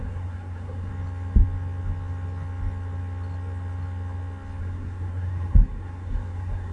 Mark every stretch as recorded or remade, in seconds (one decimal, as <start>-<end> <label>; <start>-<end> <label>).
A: 0.0-0.9 remade; 0.9-4.6 recorded; 4.6-6.7 remade